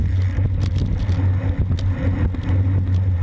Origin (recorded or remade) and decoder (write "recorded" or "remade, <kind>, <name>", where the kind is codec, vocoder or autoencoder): recorded